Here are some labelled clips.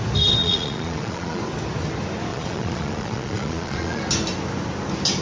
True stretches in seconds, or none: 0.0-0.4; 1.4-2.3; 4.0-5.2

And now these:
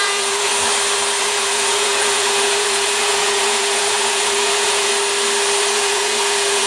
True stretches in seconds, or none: 0.5-1.2; 4.9-5.6

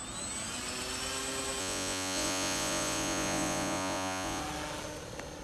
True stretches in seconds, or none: 0.0-1.6; 4.4-5.4

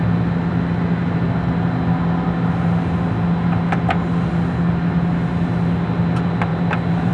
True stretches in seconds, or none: 0.0-7.1

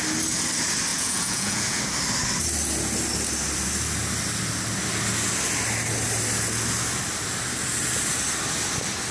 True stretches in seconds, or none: 0.0-0.9; 1.8-9.1

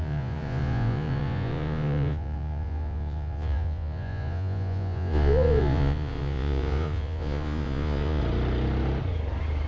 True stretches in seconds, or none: 8.2-9.7